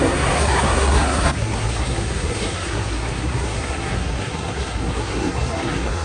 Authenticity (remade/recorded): remade